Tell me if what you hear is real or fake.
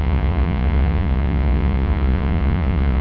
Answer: fake